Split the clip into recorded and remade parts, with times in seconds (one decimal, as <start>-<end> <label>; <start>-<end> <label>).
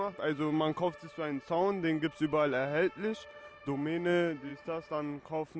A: 0.0-5.6 recorded